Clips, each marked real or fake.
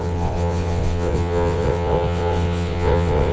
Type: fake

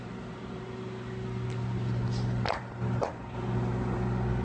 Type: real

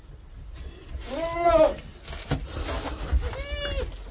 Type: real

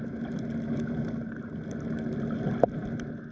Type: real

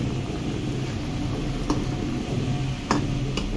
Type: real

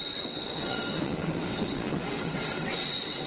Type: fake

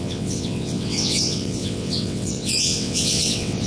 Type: fake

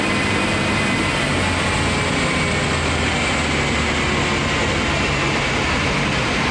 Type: real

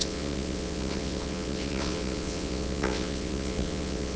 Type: fake